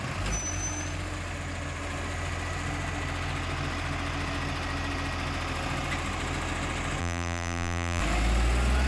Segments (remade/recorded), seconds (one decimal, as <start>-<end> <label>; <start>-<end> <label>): 0.0-7.0 recorded; 7.0-8.0 remade; 8.0-8.9 recorded